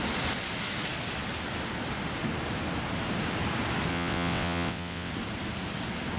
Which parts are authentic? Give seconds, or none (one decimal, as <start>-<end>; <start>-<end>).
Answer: 0.0-3.9; 5.1-6.2

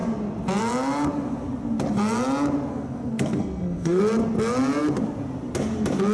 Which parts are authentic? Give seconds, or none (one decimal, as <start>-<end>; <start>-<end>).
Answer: 0.0-2.7; 4.0-6.1

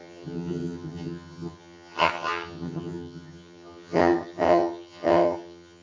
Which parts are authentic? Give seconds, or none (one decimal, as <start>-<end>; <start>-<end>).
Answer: none

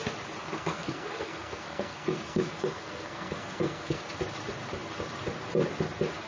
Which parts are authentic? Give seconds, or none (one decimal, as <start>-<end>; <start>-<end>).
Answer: 0.0-0.4; 4.2-6.3

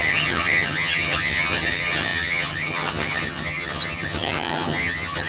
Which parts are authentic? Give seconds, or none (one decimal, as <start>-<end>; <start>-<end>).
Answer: none

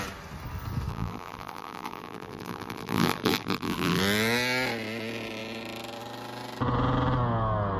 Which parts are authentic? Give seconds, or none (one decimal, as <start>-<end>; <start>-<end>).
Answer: 0.0-0.9; 4.0-7.8

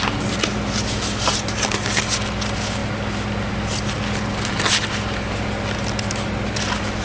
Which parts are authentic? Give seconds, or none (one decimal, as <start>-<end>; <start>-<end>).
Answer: 0.0-7.0